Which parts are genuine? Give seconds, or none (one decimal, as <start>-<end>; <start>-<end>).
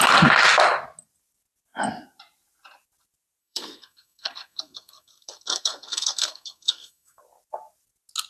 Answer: 0.0-3.4; 7.2-8.3